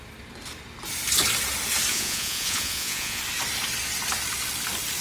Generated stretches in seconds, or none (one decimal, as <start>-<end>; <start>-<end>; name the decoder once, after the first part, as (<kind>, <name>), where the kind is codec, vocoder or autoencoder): 1.9-3.2 (vocoder, Vocos)